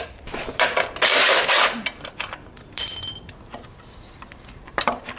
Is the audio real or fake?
fake